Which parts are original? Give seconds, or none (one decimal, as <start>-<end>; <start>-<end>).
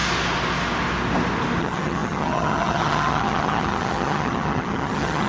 0.0-1.6